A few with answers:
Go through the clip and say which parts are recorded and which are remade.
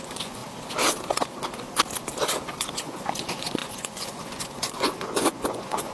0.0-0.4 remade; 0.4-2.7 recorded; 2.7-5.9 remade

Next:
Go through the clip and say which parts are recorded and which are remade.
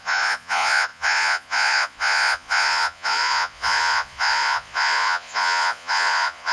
0.0-6.5 remade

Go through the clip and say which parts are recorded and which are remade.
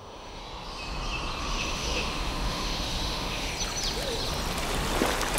0.0-0.4 remade; 0.4-1.4 recorded; 1.4-3.5 remade; 3.5-5.4 recorded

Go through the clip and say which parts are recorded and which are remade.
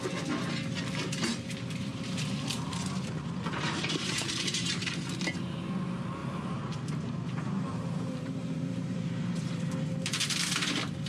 0.0-1.9 recorded; 1.9-4.9 remade; 4.9-6.2 recorded; 6.2-9.7 remade; 9.7-11.1 recorded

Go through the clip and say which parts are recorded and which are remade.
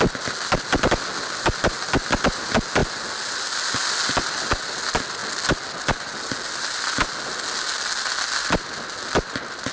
0.0-9.7 recorded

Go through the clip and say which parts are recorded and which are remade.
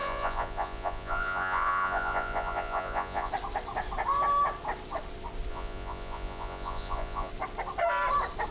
0.0-3.3 remade; 3.3-5.5 recorded; 5.5-7.3 remade; 7.3-8.5 recorded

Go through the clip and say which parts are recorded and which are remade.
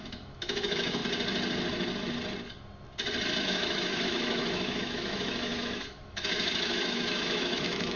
0.0-1.0 remade; 1.0-3.4 recorded; 3.4-8.0 remade